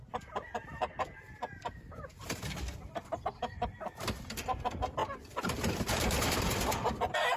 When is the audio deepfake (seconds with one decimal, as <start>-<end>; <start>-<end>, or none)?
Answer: 0.0-7.4